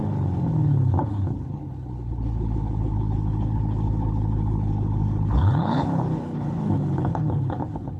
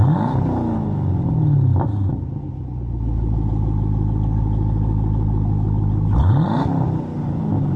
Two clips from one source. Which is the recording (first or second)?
second